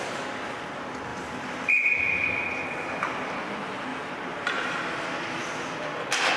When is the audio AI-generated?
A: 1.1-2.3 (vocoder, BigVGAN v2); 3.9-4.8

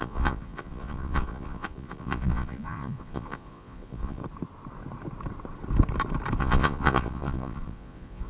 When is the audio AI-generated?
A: 0.0-4.2 (vocoder, Vocos); 6.4-8.3